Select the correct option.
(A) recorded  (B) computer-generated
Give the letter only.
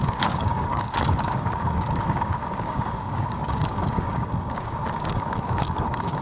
B